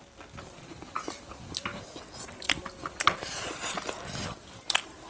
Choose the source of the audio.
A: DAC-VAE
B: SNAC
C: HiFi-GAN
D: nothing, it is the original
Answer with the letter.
D